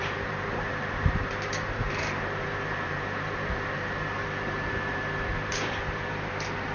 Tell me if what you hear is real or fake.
fake